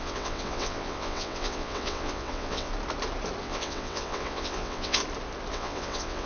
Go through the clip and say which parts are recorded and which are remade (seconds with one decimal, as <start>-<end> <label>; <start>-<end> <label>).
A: 0.0-2.7 remade; 2.7-3.4 recorded; 3.4-5.0 remade; 5.0-5.5 recorded; 5.5-6.3 remade